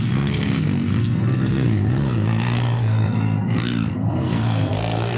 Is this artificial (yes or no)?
yes